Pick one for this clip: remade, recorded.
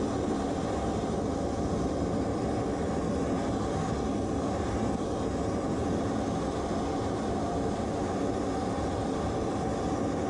recorded